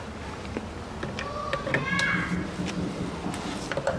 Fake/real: real